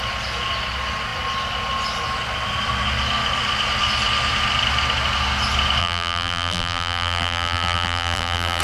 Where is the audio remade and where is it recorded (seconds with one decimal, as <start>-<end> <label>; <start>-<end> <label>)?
0.0-5.8 recorded; 5.8-8.6 remade